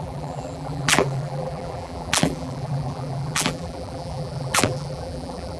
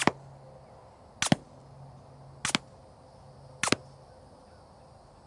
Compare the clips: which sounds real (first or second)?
second